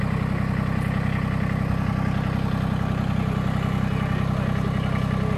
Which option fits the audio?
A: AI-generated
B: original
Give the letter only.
B